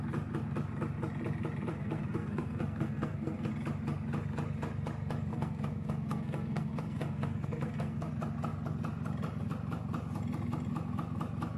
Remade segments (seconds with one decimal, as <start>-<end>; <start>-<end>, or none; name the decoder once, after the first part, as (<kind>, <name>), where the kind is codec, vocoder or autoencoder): 1.7-3.5 (codec, SNAC); 5.3-8.1